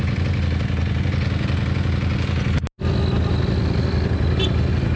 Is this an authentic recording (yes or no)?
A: yes